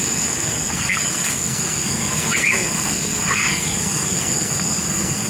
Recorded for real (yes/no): no